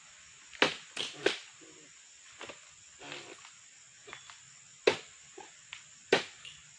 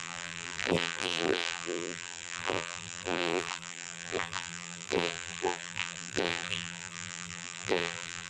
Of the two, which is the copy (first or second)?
second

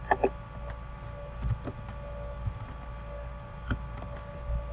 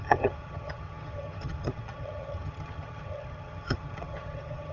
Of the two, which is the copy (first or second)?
second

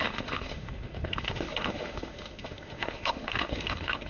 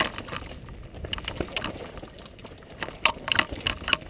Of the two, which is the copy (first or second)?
first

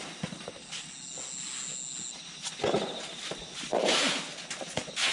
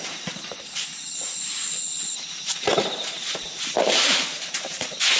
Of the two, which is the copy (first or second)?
second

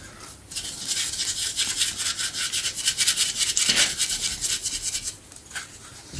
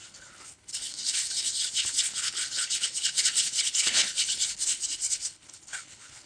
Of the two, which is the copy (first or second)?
second